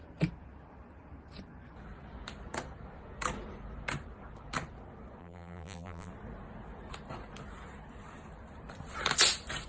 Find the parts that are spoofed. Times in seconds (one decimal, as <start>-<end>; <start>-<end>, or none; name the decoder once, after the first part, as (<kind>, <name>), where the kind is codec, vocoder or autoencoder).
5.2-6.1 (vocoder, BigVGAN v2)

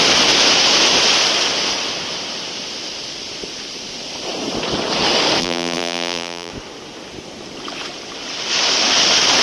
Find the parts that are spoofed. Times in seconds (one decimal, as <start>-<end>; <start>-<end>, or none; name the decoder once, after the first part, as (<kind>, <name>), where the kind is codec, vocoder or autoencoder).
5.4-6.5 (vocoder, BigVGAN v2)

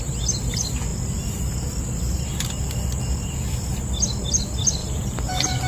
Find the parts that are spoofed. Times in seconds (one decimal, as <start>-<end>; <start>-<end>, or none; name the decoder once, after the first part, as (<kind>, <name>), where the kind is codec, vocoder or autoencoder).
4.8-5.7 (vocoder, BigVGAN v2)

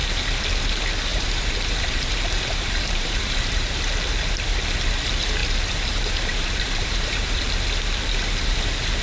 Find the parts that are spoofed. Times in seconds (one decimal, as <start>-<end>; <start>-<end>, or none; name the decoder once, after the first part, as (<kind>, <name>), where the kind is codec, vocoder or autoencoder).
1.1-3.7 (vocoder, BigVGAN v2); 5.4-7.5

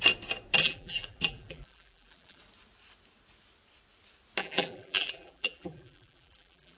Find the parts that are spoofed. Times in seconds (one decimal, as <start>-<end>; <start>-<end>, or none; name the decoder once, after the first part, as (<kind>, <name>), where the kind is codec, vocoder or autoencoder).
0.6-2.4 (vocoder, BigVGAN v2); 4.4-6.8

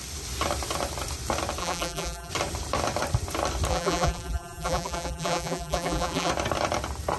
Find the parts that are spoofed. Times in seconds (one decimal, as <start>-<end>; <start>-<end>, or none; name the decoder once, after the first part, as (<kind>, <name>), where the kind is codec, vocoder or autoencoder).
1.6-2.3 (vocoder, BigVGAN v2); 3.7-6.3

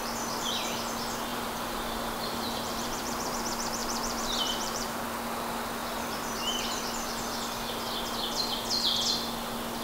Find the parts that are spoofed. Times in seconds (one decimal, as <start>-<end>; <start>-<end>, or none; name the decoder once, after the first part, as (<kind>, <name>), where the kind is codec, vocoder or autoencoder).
1.3-3.4 (vocoder, BigVGAN v2); 3.8-5.0; 5.8-6.8

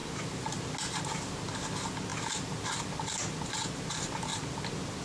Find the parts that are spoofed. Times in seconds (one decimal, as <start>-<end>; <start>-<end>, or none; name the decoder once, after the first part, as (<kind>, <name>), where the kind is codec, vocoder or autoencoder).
none